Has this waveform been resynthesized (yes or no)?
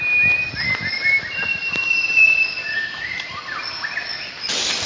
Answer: no